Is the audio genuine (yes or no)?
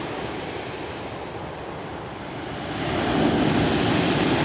yes